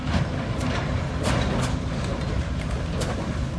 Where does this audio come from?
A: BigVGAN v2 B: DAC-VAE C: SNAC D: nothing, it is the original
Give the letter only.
D